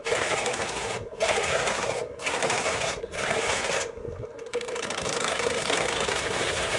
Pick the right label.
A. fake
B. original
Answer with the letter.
A